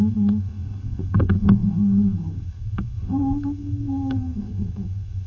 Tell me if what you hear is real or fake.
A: fake